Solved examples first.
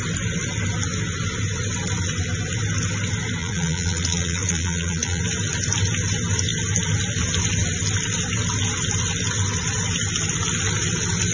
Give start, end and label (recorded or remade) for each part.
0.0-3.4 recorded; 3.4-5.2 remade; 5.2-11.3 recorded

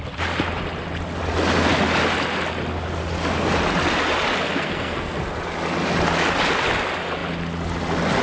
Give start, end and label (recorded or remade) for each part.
0.0-4.5 recorded; 4.5-5.2 remade; 5.2-8.2 recorded

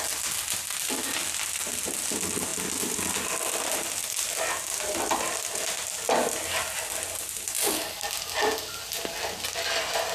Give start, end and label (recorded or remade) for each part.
0.0-10.1 recorded

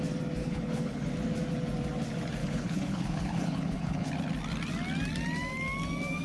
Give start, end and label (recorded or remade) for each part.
0.0-0.4 recorded; 0.4-1.1 remade; 1.1-2.4 recorded; 2.4-4.1 remade; 4.1-6.2 recorded

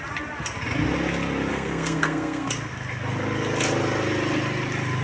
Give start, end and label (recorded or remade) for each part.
0.0-1.5 recorded; 1.5-2.5 remade; 2.5-5.0 recorded

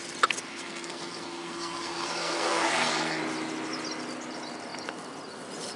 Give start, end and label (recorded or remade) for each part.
0.0-0.5 recorded; 0.5-3.2 remade; 3.2-5.8 recorded

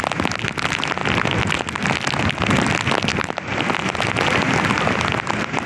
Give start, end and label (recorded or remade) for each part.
0.0-1.0 recorded; 1.0-2.3 remade; 2.3-5.7 recorded